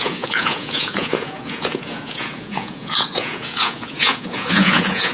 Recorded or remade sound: remade